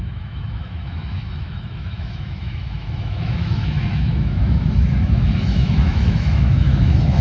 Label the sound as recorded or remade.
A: remade